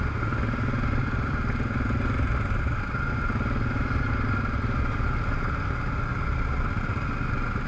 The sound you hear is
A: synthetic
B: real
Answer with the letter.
B